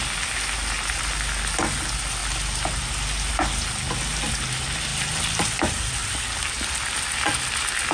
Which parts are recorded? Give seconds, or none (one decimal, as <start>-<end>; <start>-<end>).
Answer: 0.0-6.0; 6.8-7.9